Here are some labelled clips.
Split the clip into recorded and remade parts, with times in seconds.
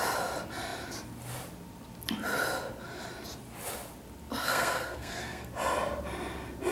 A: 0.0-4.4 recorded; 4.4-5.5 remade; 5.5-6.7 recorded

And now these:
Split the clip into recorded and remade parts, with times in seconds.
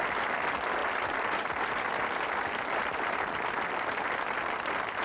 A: 0.0-5.0 recorded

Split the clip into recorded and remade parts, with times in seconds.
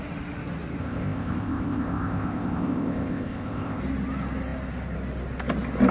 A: 0.0-0.8 recorded; 0.8-3.8 remade; 3.8-5.9 recorded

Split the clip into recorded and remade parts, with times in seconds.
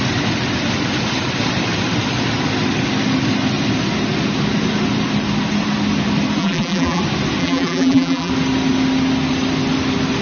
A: 0.0-6.4 recorded; 6.4-7.0 remade; 7.0-7.4 recorded; 7.4-8.3 remade; 8.3-10.2 recorded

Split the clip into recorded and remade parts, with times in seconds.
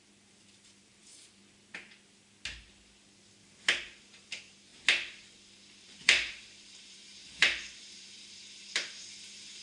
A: 0.0-1.4 remade; 1.4-3.8 recorded; 3.8-4.7 remade; 4.7-5.8 recorded; 5.8-9.6 remade